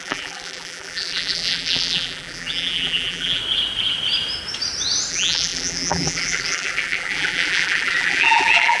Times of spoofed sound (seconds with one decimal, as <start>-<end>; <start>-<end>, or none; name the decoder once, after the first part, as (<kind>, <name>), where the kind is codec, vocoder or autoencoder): 0.0-3.4 (vocoder, BigVGAN v2); 5.1-8.8